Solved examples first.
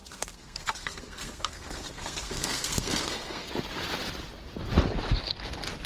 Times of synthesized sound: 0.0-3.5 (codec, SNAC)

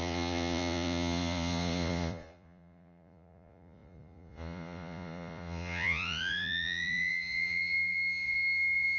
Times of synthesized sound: 0.0-9.0 (vocoder, Vocos)